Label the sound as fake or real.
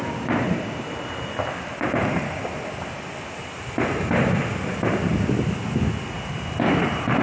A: real